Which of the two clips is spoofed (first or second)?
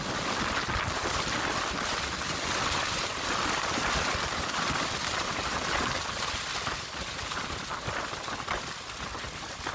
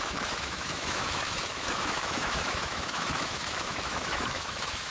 second